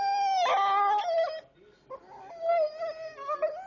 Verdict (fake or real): real